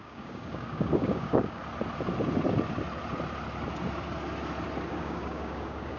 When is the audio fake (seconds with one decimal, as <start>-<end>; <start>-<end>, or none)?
0.0-1.6; 4.9-6.0